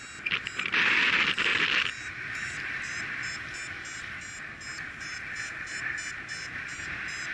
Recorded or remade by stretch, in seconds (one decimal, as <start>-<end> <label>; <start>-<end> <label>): 0.0-7.3 recorded